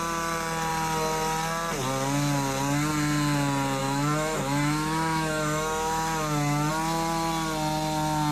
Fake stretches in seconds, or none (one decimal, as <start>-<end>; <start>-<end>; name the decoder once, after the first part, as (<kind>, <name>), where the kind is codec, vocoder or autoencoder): 3.8-6.7 (autoencoder, DAC-VAE)